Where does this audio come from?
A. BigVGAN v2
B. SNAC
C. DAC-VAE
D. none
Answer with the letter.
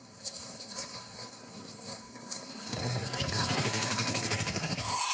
B